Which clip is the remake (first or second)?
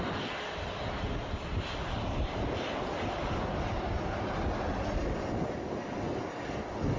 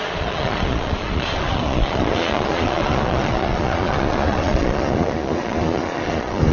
second